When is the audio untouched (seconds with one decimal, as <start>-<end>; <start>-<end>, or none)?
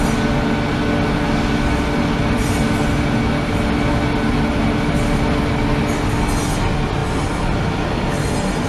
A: 0.0-8.7